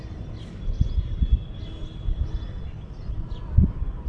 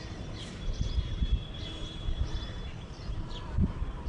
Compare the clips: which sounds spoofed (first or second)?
second